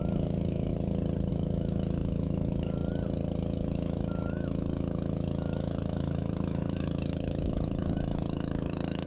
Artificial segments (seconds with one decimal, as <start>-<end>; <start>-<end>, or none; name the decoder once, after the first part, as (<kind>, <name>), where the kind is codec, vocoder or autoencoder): 0.0-0.7 (autoencoder, DAC-VAE); 1.3-2.8; 3.4-9.1